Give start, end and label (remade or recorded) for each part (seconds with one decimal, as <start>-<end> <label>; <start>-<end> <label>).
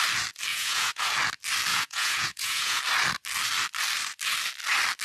0.0-0.5 recorded; 0.5-1.1 remade; 1.1-1.7 recorded; 1.7-2.8 remade; 2.8-5.0 recorded